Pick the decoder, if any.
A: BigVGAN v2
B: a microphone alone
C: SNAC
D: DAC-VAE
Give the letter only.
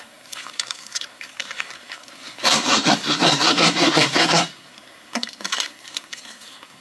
C